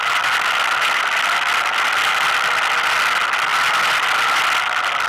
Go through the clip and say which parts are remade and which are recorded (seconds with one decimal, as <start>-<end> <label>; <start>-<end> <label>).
0.0-5.1 recorded